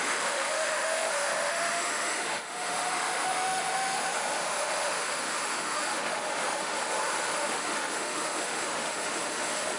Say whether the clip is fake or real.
fake